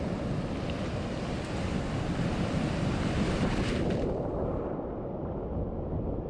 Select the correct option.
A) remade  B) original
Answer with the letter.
B